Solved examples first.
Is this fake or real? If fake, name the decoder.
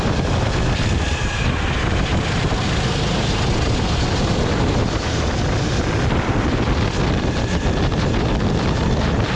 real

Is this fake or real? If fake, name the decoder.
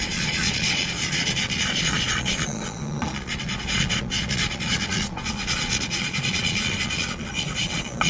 fake, vocoder, Vocos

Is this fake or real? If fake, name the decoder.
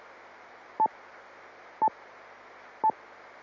real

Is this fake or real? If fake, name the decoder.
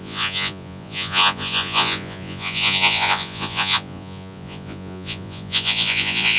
fake, vocoder, Vocos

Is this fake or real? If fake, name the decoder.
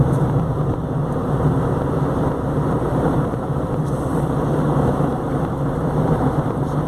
fake, vocoder, BigVGAN v2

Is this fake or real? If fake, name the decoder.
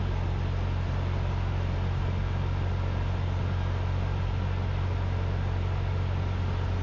real